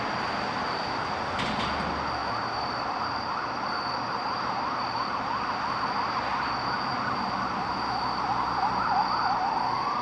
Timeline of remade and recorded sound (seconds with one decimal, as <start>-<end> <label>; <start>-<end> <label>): 0.0-10.0 recorded